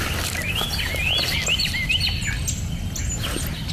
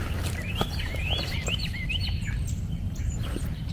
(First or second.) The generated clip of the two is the second